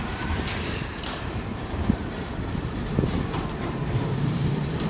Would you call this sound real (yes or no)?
no